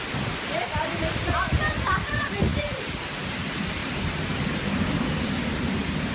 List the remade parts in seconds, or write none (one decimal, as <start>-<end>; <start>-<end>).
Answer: 0.0-2.5; 3.4-3.8

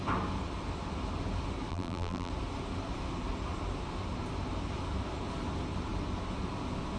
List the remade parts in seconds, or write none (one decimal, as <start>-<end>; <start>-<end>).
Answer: 1.7-2.3

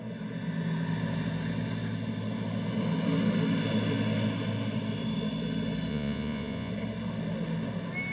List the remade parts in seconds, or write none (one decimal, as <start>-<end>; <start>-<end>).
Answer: 5.9-6.7

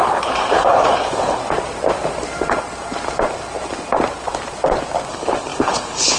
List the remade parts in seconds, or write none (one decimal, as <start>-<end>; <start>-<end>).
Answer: 0.0-1.4; 5.1-6.2

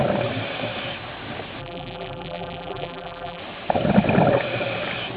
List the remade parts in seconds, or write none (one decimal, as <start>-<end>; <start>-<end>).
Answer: 1.6-3.4

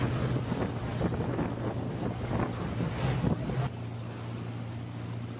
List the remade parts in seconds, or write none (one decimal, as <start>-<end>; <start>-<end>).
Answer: none

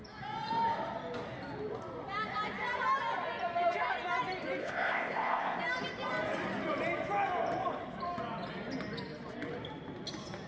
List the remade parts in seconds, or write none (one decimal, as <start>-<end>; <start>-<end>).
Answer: 4.6-5.6